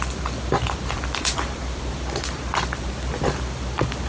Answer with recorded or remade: recorded